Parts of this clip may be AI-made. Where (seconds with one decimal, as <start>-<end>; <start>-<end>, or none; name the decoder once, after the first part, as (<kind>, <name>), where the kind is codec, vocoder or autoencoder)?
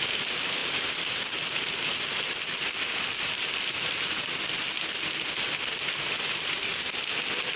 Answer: none